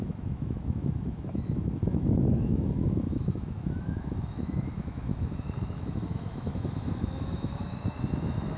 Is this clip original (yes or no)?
no